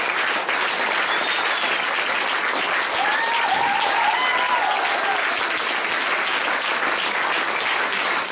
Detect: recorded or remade recorded